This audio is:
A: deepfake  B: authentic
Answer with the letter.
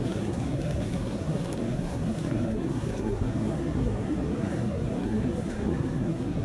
A